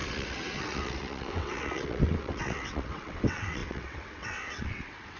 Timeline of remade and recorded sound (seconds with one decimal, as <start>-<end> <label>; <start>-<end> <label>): 0.0-5.2 remade